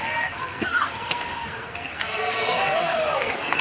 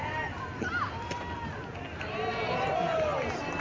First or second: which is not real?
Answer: first